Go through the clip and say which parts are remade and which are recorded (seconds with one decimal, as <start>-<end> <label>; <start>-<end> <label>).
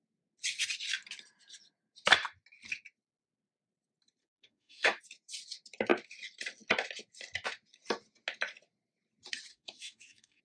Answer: 0.0-4.2 recorded; 4.2-5.0 remade; 5.0-9.5 recorded; 9.5-10.4 remade